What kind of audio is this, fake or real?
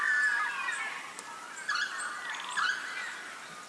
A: real